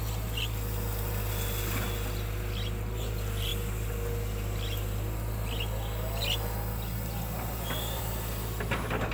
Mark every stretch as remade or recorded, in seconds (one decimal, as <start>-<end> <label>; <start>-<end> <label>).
0.0-9.1 recorded